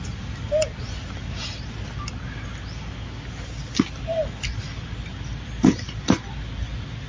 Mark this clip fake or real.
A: real